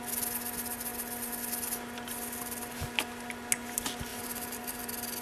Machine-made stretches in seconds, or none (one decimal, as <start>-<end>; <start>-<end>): 4.1-4.8